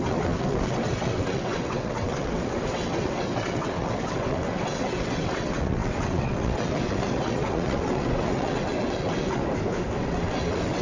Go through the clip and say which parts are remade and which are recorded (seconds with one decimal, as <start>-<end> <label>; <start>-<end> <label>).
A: 0.0-9.4 remade; 9.4-10.0 recorded; 10.0-10.8 remade